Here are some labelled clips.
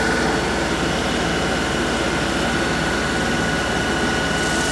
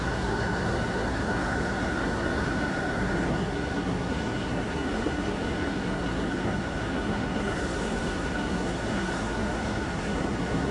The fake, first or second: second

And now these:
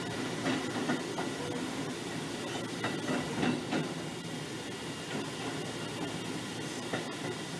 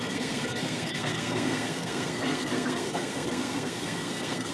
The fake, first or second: second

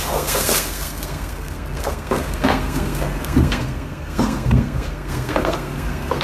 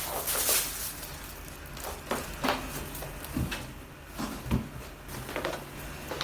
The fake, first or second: first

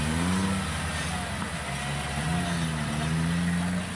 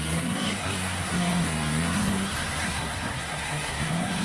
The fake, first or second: second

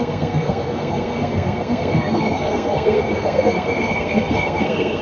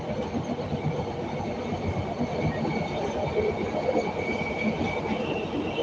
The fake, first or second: first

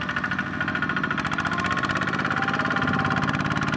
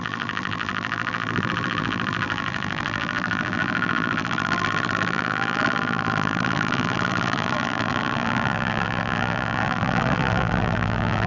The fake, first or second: second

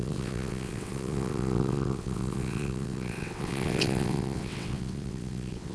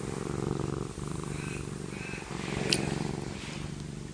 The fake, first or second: first